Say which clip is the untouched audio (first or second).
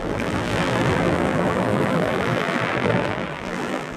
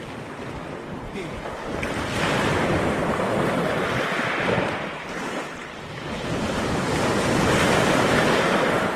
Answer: second